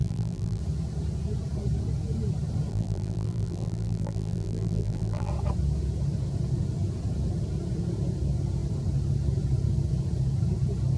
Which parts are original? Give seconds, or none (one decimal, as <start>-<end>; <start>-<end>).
0.6-2.7; 5.3-11.0